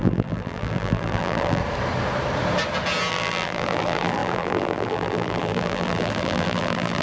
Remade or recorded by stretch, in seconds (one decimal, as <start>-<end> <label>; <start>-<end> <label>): 0.0-1.6 remade; 1.6-3.1 recorded; 3.1-7.0 remade

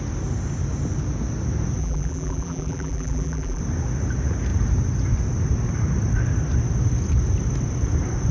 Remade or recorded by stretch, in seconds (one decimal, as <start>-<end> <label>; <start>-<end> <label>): 0.0-1.8 recorded; 1.8-3.6 remade; 3.6-8.3 recorded